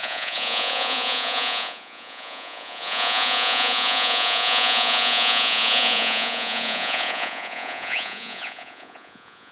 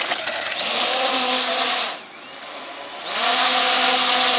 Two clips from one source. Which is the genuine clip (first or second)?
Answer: second